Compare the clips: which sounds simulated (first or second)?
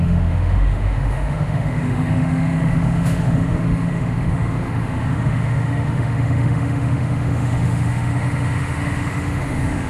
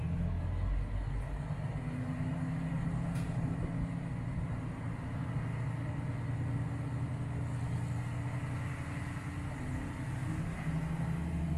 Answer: first